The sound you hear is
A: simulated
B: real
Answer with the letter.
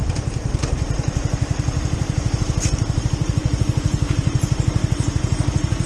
A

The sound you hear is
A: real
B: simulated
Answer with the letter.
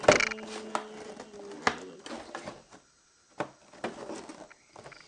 A